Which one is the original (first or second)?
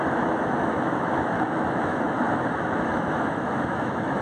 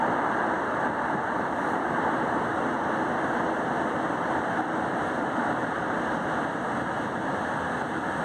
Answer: second